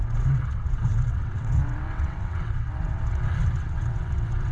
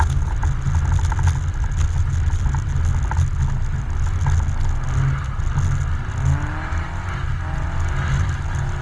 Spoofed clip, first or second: first